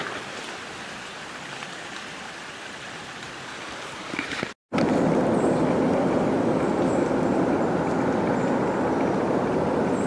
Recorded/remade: recorded